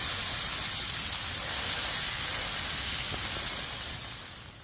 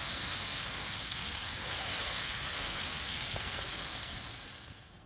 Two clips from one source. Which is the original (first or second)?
first